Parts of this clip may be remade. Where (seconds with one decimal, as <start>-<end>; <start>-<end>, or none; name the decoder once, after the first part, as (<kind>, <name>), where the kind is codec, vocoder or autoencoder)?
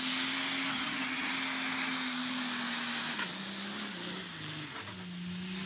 0.7-1.3 (vocoder, HiFi-GAN)